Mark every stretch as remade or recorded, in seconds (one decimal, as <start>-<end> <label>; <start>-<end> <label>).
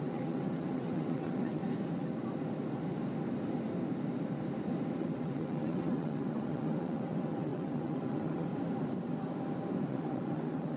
0.0-1.6 remade; 1.6-5.0 recorded; 5.0-8.5 remade; 8.5-9.9 recorded; 9.9-10.8 remade